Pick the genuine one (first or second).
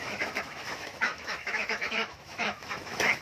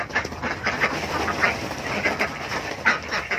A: second